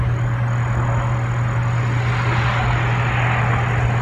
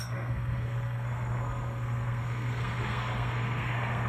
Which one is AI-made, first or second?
second